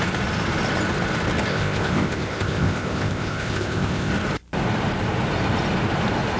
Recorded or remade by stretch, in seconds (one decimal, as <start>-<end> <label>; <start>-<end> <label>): 0.0-1.5 recorded; 1.5-4.1 remade; 4.1-6.4 recorded